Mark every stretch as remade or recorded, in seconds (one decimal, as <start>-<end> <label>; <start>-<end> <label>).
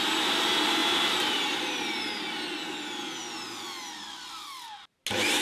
0.0-5.4 recorded